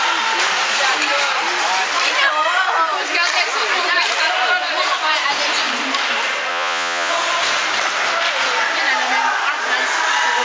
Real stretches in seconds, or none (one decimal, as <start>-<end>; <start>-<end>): 0.0-6.5; 7.1-10.4